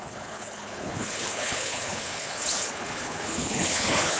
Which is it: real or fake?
fake